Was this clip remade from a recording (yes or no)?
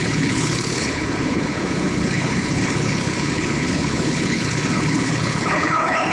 yes